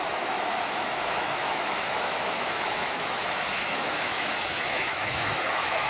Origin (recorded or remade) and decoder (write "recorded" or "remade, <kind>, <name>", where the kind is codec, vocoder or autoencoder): remade, autoencoder, DAC-VAE